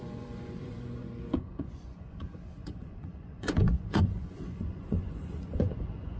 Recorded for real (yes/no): no